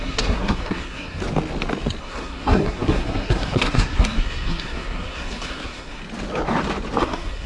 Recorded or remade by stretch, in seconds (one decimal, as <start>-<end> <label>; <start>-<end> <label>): 0.0-1.2 remade; 1.2-2.0 recorded; 2.0-6.0 remade; 6.0-7.0 recorded; 7.0-7.5 remade